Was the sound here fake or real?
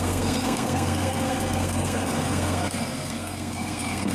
fake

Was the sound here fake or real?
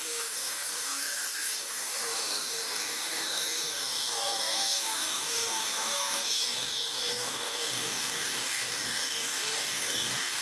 fake